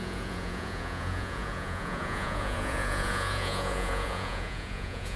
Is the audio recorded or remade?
remade